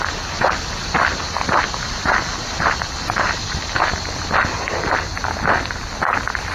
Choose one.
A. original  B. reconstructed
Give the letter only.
A